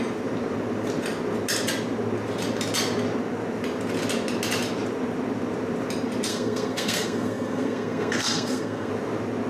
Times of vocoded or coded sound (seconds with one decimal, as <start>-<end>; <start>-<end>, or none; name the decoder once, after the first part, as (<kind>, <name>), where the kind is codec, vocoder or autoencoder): 6.3-8.9 (codec, SNAC)